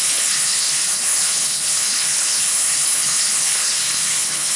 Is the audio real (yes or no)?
no